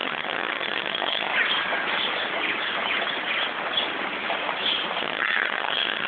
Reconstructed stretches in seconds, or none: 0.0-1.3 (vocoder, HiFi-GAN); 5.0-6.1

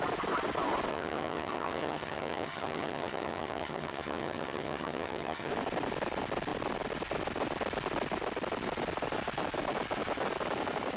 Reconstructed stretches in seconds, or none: 0.9-5.5 (vocoder, HiFi-GAN)

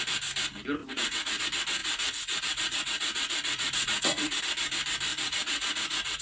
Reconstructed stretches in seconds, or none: 0.8-1.4 (vocoder, Vocos); 1.8-4.4; 5.1-6.2

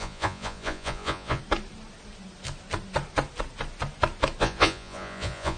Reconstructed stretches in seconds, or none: 0.0-1.4 (vocoder, Vocos); 4.4-5.6

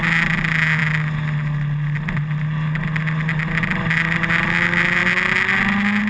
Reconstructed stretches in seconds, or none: none